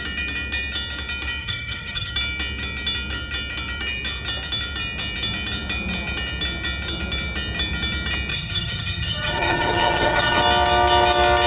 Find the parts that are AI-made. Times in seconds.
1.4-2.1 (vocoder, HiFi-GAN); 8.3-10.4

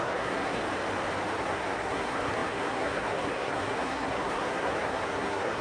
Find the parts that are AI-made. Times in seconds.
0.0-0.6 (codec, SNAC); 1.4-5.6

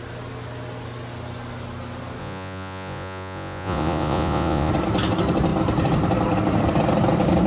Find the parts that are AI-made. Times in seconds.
2.2-4.7 (vocoder, Vocos)

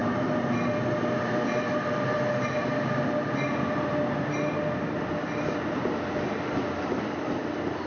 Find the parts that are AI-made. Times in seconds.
none

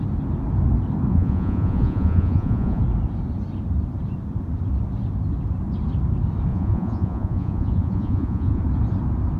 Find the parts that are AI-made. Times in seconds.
1.1-2.8 (vocoder, Vocos); 6.5-8.6